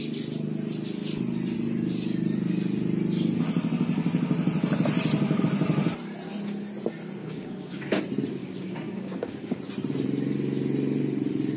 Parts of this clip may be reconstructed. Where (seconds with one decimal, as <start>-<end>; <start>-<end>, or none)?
7.2-8.0; 8.4-9.6